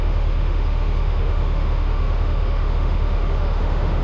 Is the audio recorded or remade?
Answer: remade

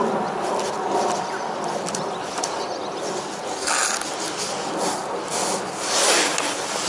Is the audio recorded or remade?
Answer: recorded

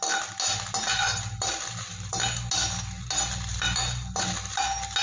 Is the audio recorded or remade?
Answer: recorded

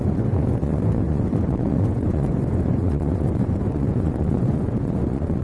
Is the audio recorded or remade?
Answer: remade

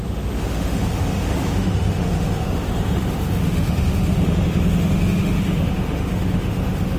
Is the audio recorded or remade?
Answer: remade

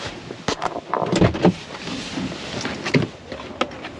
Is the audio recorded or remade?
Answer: recorded